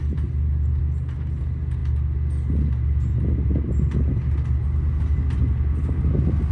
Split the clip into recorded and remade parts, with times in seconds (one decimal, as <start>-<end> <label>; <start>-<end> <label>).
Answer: 0.0-6.5 recorded